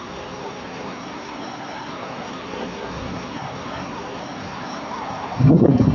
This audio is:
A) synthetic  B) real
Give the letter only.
A